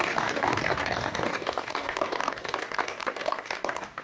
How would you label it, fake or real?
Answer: fake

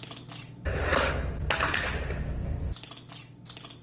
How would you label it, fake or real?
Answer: real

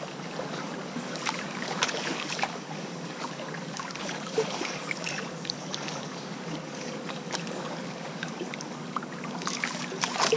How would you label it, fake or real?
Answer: fake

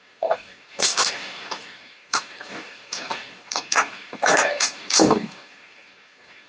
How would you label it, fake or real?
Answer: fake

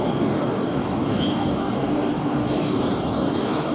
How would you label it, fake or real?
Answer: fake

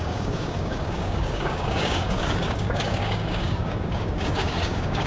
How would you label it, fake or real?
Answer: fake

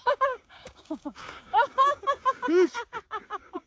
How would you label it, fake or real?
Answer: fake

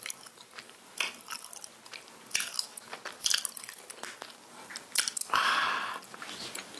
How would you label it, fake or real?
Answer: real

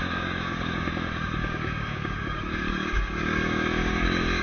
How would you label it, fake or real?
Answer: fake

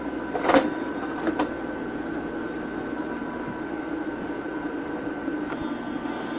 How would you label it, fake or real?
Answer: real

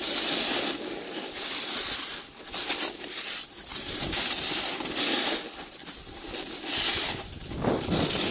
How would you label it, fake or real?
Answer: real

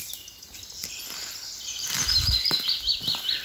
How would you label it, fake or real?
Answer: real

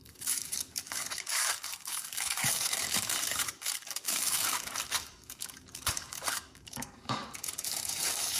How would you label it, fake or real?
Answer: fake